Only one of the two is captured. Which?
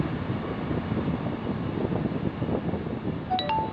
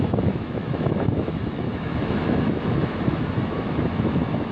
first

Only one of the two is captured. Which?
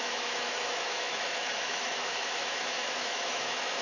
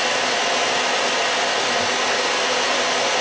second